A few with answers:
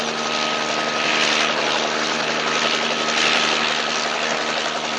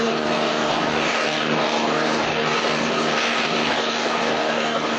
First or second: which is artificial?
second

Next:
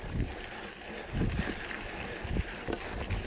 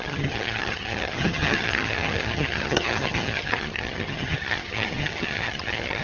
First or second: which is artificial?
second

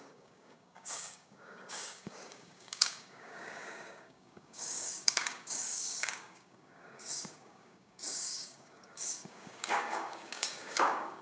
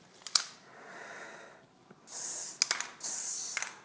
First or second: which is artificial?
first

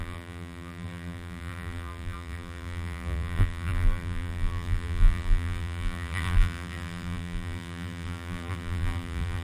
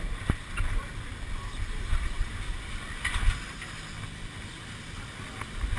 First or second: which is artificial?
first